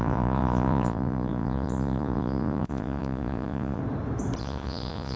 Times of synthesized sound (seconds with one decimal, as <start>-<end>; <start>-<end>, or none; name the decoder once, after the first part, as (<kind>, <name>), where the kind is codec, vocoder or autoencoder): 0.0-3.8 (vocoder, Vocos); 4.4-5.2

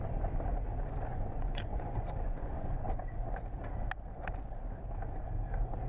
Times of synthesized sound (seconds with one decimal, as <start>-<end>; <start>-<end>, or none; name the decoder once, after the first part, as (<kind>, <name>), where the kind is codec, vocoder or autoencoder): 1.1-3.0 (vocoder, Vocos)

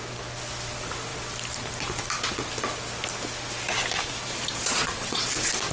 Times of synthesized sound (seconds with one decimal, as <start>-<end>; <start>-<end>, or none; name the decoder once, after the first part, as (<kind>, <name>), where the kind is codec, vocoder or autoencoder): 4.7-5.3 (vocoder, WaveNeXt)

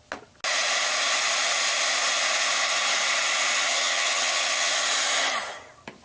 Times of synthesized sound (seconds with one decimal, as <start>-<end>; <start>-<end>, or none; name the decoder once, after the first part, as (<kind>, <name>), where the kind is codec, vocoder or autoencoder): 3.7-4.7 (vocoder, HiFi-GAN)

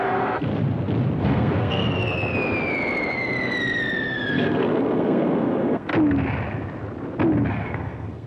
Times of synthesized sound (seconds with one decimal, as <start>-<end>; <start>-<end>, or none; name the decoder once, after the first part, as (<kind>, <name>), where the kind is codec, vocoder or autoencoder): 0.0-0.5 (codec, SNAC); 1.2-1.8; 4.3-5.9; 7.5-8.3

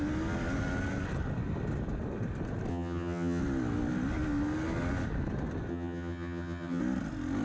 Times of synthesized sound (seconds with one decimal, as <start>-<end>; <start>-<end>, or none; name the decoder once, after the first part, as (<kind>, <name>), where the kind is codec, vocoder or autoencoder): 2.7-3.4 (vocoder, HiFi-GAN); 5.7-6.8